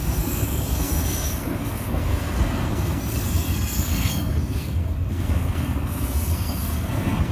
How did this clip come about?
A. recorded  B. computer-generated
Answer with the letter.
B